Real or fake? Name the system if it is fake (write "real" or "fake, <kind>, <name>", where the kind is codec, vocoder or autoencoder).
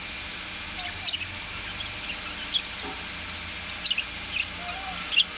real